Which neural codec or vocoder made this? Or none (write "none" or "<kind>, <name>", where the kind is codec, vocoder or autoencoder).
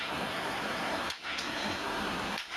codec, SNAC